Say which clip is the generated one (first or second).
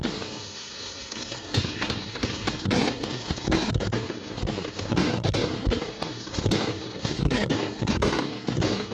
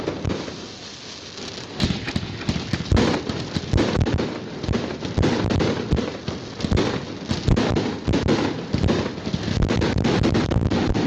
first